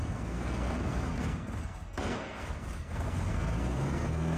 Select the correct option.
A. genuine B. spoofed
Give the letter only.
B